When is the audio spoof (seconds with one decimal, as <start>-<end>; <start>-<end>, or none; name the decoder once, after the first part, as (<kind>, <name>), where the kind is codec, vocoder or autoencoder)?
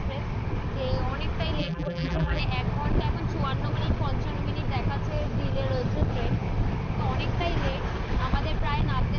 1.6-2.4 (vocoder, BigVGAN v2)